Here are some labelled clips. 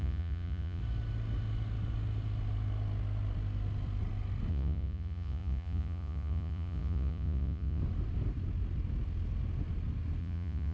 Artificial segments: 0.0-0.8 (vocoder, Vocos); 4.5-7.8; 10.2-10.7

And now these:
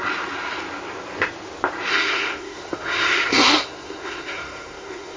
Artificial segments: 1.9-5.2 (codec, SNAC)

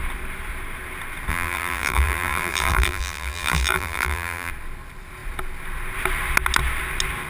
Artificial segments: 1.3-4.5 (vocoder, BigVGAN v2)

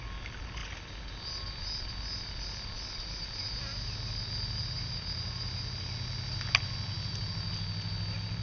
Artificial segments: none

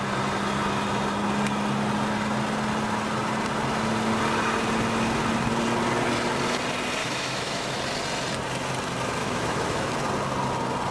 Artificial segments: 7.0-7.8 (autoencoder, DAC-VAE); 9.2-9.9

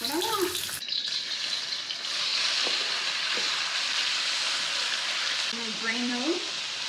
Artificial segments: 0.0-6.9 (vocoder, BigVGAN v2)